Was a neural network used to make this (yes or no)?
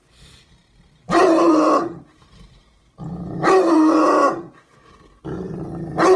no